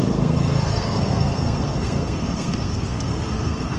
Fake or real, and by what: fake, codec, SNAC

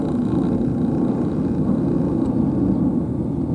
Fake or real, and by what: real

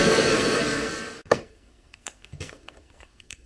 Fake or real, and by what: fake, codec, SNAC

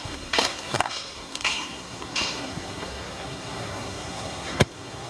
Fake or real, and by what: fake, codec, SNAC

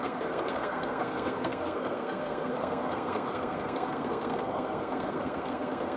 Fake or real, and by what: fake, codec, SNAC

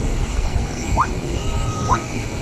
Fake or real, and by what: fake, codec, SNAC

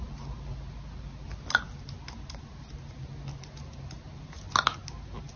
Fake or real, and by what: real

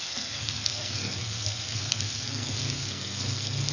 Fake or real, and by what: fake, codec, SNAC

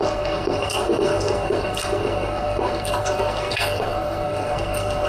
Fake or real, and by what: fake, codec, SNAC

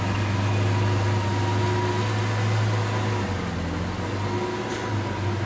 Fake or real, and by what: real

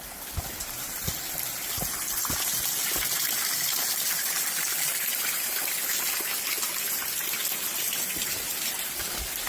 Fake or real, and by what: real